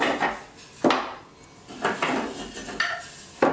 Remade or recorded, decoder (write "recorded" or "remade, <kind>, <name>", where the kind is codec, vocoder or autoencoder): recorded